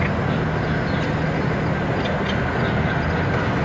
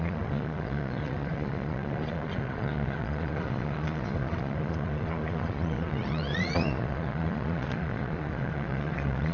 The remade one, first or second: second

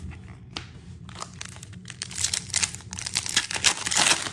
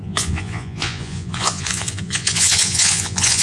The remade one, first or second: second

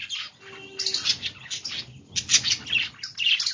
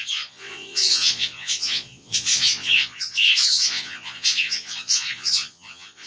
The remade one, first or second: second